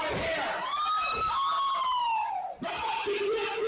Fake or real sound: real